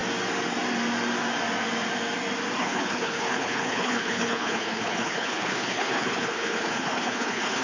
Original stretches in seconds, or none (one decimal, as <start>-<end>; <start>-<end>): 0.0-2.6